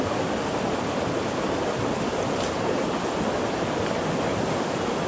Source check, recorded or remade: recorded